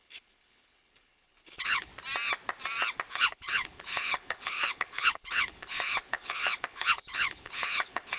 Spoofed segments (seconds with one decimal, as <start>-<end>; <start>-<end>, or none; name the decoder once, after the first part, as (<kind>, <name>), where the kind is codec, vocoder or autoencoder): 0.0-1.9 (codec, HILCodec); 3.1-8.2